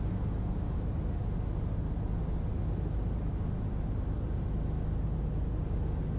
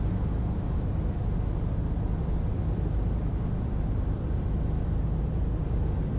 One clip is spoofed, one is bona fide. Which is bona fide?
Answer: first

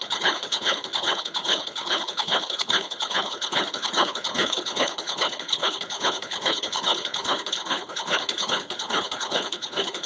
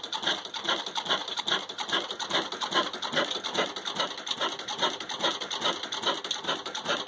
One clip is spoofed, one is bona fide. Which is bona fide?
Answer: second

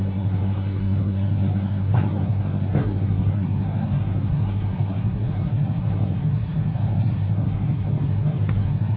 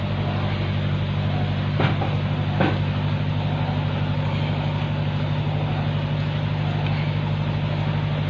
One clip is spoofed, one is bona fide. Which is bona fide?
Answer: second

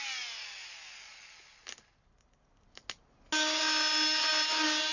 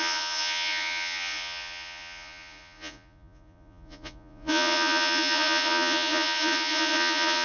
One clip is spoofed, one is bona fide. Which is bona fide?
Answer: first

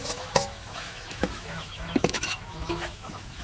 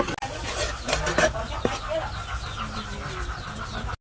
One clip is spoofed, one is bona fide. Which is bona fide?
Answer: second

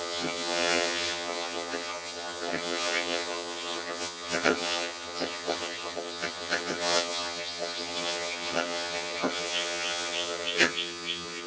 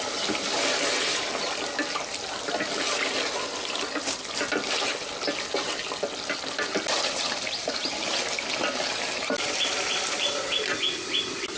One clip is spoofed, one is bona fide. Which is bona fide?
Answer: second